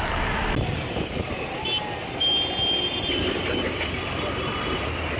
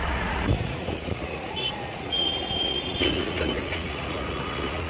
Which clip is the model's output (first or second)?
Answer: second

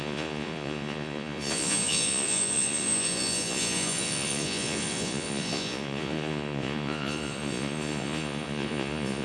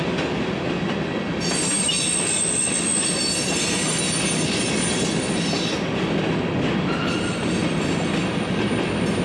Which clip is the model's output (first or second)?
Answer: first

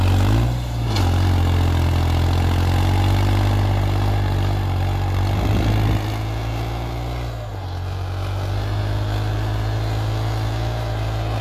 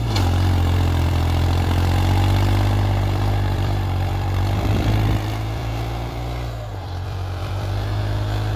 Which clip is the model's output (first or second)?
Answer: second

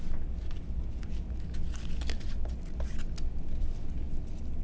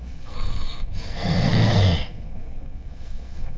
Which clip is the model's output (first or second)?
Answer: second